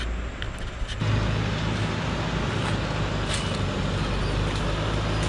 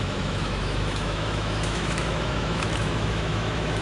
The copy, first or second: second